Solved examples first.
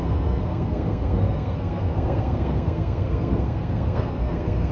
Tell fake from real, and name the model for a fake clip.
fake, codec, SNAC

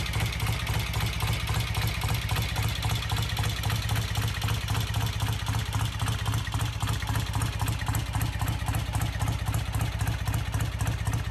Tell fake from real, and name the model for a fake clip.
real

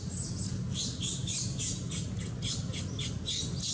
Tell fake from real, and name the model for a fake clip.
real